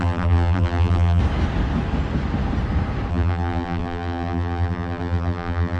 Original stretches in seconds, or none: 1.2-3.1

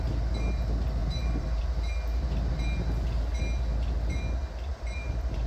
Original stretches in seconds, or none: 0.0-1.0; 1.6-4.7

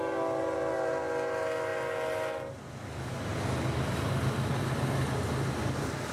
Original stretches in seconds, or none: 0.0-6.1

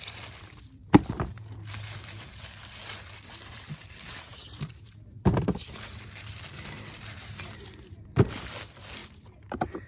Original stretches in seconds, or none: none

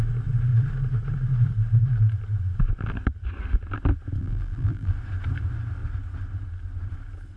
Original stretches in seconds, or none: 0.0-4.2; 4.9-7.4

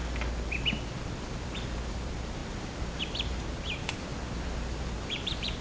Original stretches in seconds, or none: 0.0-1.9; 2.4-3.0; 4.1-5.0

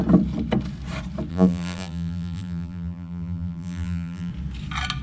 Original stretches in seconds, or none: 0.0-1.3; 4.3-5.0